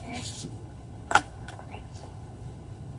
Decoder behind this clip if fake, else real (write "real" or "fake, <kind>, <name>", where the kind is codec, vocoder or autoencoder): fake, codec, HILCodec